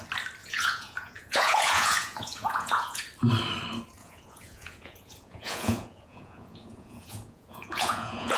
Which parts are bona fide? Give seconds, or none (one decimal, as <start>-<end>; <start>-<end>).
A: 0.0-0.4; 3.0-4.0